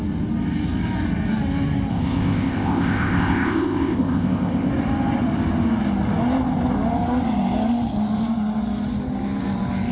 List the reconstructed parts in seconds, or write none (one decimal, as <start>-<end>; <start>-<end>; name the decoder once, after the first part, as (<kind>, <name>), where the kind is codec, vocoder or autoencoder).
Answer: 1.9-4.7 (codec, ZipCodec)